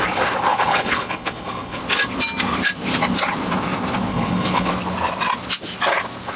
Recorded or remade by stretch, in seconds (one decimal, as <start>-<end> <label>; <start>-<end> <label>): 0.0-0.5 recorded; 0.5-1.8 remade; 1.8-4.1 recorded; 4.1-4.7 remade; 4.7-6.4 recorded